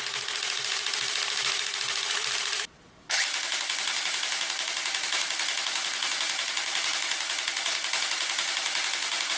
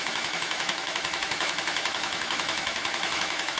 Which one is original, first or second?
first